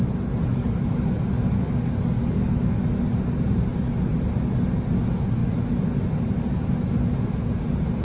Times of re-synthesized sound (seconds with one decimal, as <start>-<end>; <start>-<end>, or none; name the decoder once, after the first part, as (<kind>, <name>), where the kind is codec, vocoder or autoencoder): 0.5-2.8 (codec, DAC)